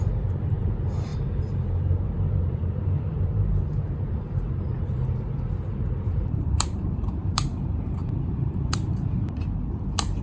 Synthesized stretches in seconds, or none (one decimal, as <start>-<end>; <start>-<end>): 0.0-10.2